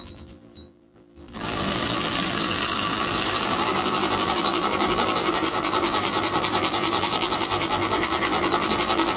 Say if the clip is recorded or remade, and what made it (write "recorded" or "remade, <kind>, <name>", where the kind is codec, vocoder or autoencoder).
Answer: remade, vocoder, BigVGAN v2